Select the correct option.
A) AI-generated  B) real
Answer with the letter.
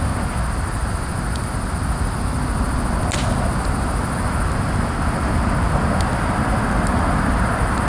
B